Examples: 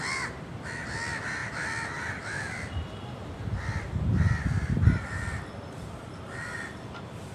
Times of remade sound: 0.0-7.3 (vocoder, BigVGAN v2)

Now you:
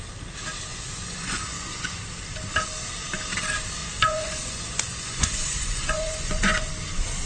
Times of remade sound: 0.7-2.0 (vocoder, Vocos); 3.8-6.7

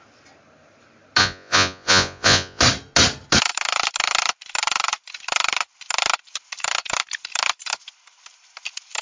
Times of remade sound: 1.2-2.6 (vocoder, Vocos)

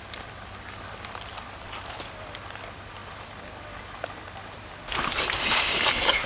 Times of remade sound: none